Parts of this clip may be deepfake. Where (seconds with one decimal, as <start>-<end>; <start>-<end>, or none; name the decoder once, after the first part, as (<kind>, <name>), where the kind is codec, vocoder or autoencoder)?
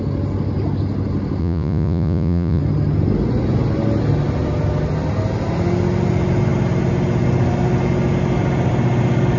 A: 1.4-2.6 (vocoder, Vocos)